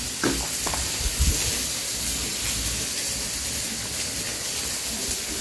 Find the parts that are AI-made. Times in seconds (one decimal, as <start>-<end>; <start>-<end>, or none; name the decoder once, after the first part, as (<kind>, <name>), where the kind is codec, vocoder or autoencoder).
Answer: none